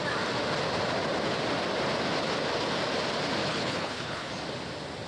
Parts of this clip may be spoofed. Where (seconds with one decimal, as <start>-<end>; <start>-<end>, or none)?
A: 3.4-4.3